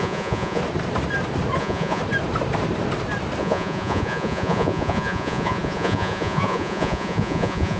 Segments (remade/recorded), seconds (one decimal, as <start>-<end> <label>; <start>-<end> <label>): 0.0-0.6 remade; 0.6-1.6 recorded; 1.6-2.0 remade; 2.0-3.4 recorded; 3.4-7.8 remade